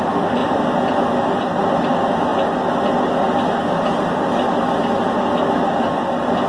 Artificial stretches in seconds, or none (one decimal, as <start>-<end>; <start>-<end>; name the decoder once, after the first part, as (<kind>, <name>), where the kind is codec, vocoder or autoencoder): none